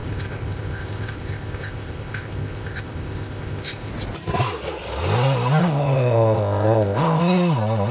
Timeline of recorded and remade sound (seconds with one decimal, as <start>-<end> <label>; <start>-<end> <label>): 0.0-3.9 remade; 3.9-5.6 recorded; 5.6-7.2 remade; 7.2-7.9 recorded